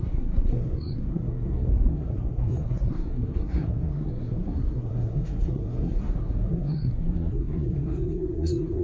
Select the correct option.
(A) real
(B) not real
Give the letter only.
B